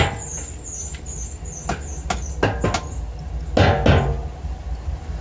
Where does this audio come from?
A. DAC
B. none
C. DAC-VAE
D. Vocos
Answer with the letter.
B